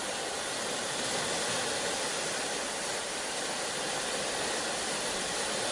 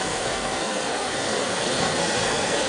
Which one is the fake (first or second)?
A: second